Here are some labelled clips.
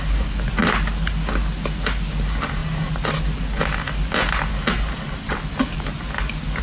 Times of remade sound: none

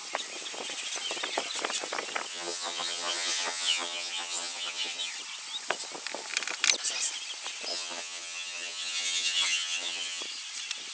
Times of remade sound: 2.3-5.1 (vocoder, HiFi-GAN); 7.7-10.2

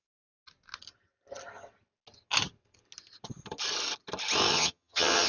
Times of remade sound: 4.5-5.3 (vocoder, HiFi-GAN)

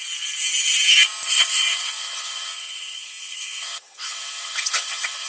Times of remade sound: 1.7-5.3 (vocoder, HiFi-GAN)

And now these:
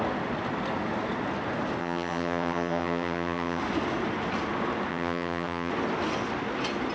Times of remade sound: 1.8-3.6 (vocoder, HiFi-GAN); 4.9-5.7

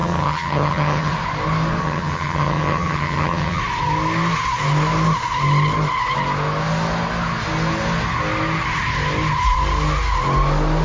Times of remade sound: 0.0-1.1 (vocoder, HiFi-GAN); 1.8-3.6